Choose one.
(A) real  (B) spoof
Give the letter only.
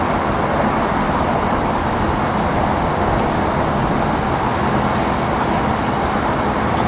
A